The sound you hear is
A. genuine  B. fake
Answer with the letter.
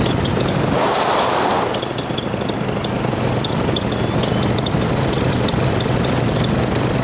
B